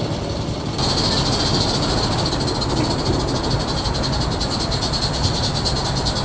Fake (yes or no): no